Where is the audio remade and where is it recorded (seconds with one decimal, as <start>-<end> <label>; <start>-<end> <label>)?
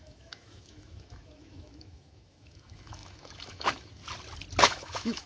0.0-4.0 remade; 4.0-4.6 recorded; 4.6-5.3 remade